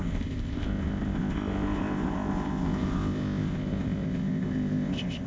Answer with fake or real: fake